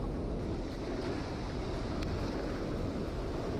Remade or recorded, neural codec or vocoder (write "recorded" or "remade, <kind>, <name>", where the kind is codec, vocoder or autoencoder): recorded